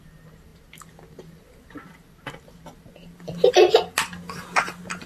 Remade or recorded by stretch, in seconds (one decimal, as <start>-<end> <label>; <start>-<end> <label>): 0.0-5.1 recorded